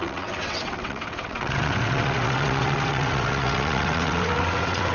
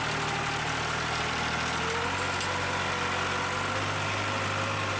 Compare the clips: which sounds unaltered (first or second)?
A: second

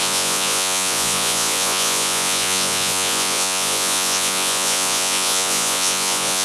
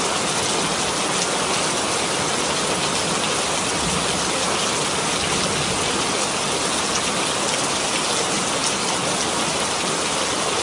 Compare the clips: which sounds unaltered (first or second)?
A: second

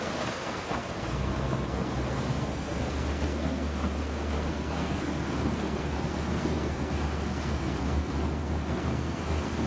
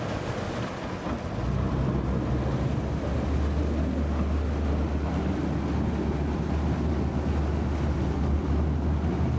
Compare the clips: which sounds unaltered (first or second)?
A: second